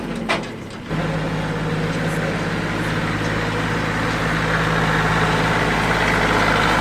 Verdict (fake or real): real